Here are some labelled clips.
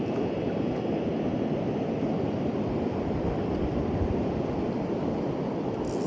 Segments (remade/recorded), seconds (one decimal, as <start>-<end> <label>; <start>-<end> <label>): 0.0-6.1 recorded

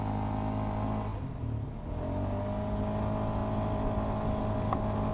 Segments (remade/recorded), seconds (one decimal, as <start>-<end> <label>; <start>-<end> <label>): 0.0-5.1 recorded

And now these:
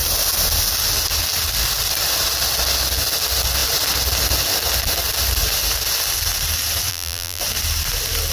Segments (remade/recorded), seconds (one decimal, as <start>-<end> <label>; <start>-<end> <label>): 0.0-6.9 recorded; 6.9-7.4 remade; 7.4-8.3 recorded